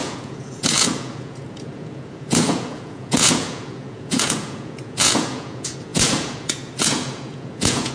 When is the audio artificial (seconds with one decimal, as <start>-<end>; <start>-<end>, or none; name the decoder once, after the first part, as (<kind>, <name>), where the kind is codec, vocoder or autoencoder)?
0.0-7.9 (vocoder, Vocos)

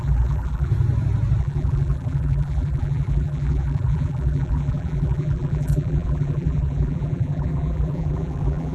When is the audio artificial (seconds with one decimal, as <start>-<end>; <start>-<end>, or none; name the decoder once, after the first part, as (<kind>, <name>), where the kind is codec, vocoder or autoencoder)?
0.0-0.7 (vocoder, BigVGAN v2); 1.4-8.7